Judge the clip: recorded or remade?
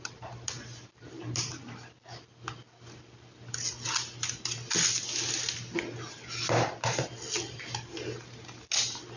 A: recorded